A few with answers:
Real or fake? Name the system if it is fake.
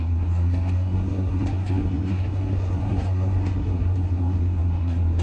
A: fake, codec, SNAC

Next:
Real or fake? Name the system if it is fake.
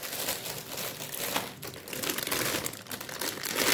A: real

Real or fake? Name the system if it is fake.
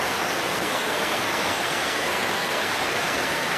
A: fake, codec, SNAC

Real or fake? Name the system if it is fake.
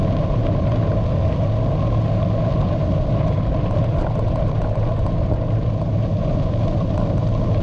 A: real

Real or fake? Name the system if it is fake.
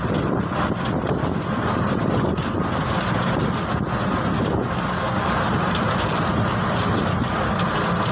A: real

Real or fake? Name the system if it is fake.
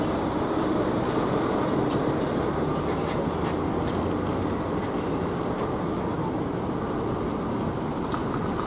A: real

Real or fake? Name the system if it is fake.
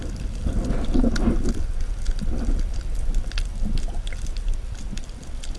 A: real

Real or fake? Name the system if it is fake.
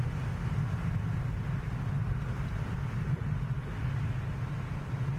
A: real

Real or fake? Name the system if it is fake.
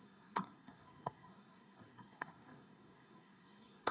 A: fake, codec, SNAC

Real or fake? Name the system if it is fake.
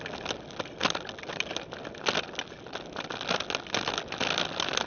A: real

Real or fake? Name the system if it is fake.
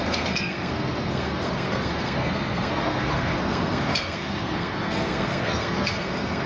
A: fake, codec, SNAC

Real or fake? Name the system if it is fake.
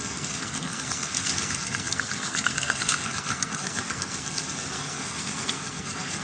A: fake, codec, SNAC